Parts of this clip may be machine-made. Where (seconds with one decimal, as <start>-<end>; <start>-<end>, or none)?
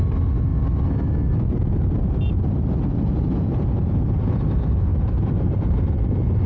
4.9-5.9